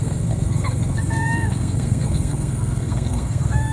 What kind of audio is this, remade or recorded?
remade